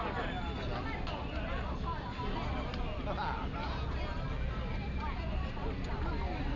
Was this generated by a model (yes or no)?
no